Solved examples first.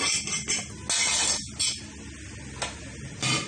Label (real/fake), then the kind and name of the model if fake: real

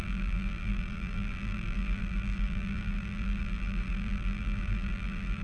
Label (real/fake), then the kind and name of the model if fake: fake, vocoder, BigVGAN v2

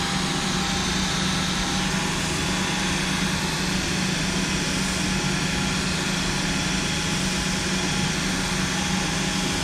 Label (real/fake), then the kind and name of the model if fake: real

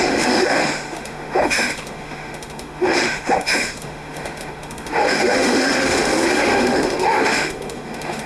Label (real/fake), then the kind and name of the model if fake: fake, autoencoder, DAC-VAE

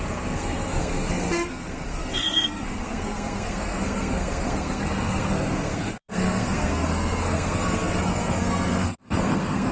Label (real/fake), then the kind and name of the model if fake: fake, codec, SNAC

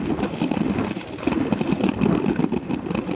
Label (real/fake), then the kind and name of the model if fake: real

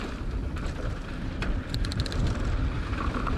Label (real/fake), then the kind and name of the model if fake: fake, vocoder, BigVGAN v2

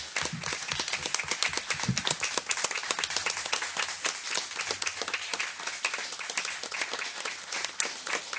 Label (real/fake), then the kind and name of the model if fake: real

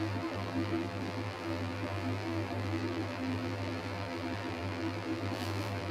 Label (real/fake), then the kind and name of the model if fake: fake, vocoder, BigVGAN v2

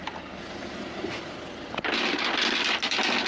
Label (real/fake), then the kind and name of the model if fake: real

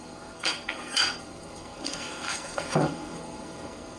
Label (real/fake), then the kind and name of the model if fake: fake, codec, SNAC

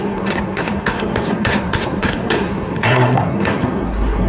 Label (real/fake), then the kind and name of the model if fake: fake, codec, SNAC